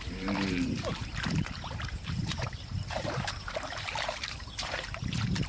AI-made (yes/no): yes